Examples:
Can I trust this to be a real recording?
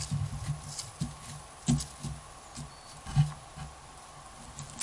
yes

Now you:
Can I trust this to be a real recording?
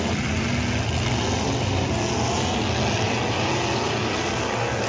yes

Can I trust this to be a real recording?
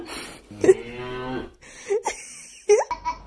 yes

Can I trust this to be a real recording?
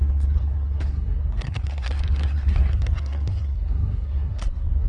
no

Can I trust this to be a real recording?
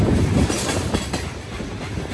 yes